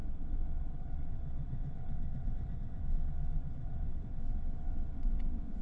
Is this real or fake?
fake